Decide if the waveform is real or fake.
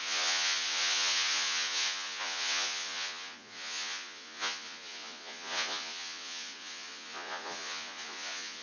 fake